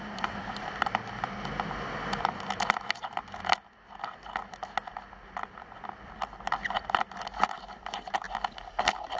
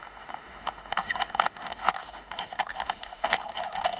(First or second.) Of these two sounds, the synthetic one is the second